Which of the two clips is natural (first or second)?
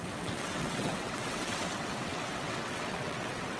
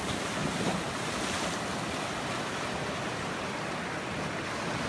second